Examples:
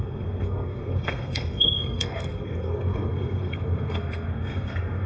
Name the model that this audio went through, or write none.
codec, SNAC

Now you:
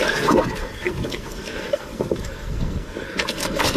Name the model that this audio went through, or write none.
codec, SNAC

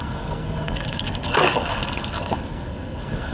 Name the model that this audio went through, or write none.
codec, SNAC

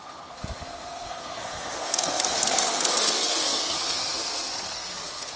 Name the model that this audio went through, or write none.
codec, SNAC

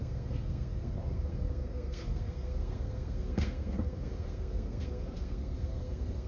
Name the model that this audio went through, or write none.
codec, SNAC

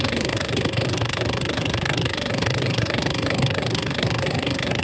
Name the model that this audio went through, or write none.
codec, SNAC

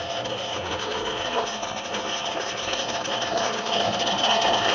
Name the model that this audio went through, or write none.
codec, SNAC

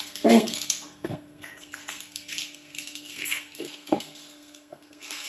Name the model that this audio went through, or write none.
codec, SNAC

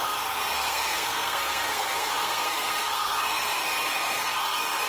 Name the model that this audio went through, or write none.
codec, SNAC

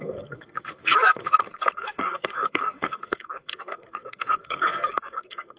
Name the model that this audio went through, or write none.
codec, SNAC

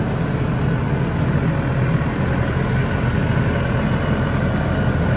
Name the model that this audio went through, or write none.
none